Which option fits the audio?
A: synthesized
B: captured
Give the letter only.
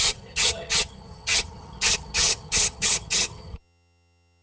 A